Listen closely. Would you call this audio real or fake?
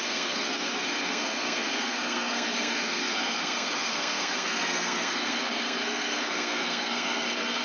fake